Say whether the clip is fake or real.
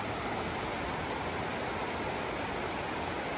real